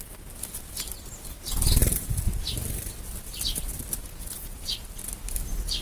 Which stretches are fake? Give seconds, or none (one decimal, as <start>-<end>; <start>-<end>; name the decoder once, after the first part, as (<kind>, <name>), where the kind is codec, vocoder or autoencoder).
4.0-4.9 (vocoder, Vocos)